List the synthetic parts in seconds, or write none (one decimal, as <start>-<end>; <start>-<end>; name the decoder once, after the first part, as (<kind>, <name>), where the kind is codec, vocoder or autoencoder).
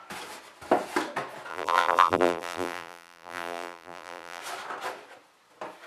1.5-4.4 (vocoder, BigVGAN v2)